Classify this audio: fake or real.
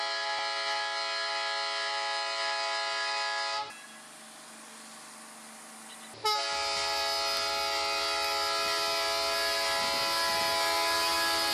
real